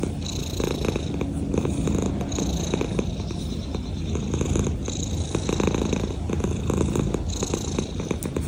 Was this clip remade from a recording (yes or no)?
no